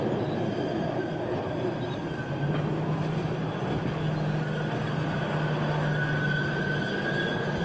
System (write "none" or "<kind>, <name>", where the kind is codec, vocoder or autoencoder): none